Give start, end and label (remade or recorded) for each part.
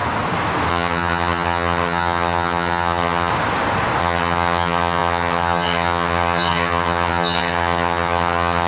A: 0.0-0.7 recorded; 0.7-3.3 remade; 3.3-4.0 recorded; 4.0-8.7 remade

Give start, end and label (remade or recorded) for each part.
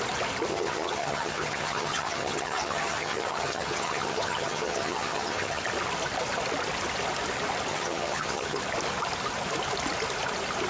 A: 0.0-0.5 recorded; 0.5-5.6 remade; 5.6-7.7 recorded; 7.7-8.6 remade; 8.6-10.7 recorded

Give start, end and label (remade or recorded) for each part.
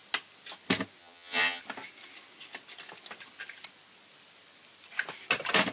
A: 0.0-1.0 recorded; 1.0-1.6 remade; 1.6-5.7 recorded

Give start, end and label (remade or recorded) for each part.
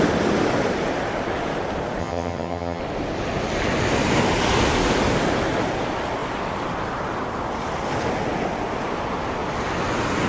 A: 0.0-2.0 recorded; 2.0-2.8 remade; 2.8-10.3 recorded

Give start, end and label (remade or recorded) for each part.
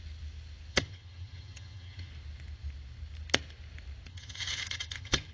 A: 0.0-0.7 recorded; 0.7-2.1 remade; 2.1-4.1 recorded; 4.1-5.3 remade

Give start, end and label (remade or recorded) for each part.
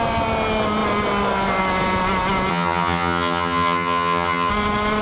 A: 0.0-2.5 recorded; 2.5-4.5 remade; 4.5-5.0 recorded